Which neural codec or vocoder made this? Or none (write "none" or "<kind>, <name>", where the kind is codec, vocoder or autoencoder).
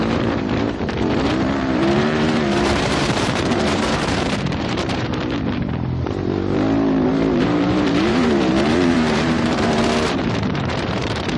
vocoder, BigVGAN v2